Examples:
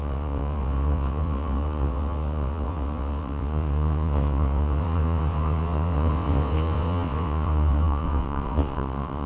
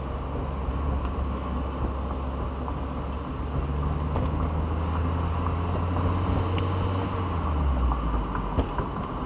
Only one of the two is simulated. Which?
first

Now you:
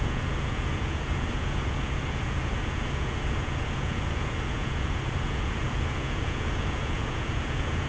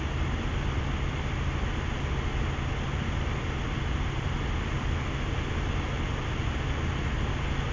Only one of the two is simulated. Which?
first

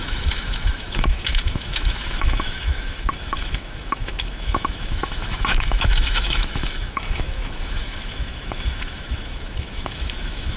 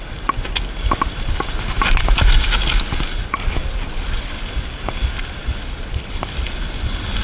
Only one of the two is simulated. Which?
first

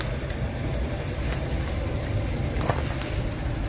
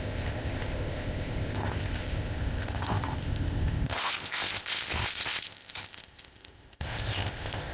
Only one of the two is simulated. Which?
second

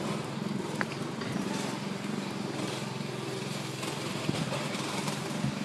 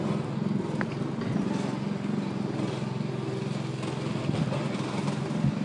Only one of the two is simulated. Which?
first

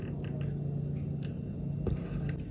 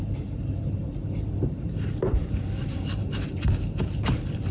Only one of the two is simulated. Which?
second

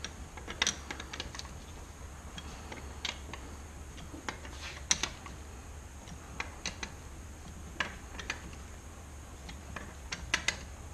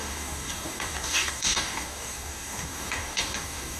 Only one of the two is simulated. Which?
second